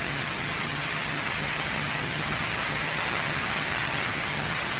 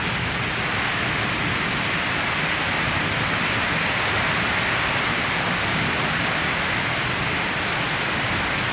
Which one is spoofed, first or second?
first